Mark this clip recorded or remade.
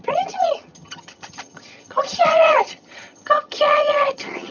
remade